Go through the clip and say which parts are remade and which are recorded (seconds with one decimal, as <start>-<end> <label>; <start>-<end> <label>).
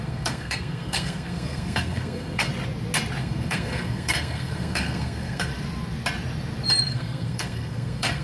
0.0-2.5 remade; 2.5-3.2 recorded; 3.2-5.5 remade; 5.5-6.9 recorded; 6.9-8.2 remade